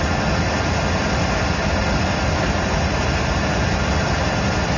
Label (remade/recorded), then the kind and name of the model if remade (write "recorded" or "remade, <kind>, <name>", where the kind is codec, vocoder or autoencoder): recorded